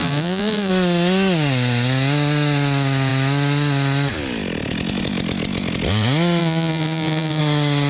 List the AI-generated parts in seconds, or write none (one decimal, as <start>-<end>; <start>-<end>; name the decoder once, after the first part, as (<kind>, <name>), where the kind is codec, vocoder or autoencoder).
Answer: 0.0-0.7 (vocoder, BigVGAN v2); 6.4-7.4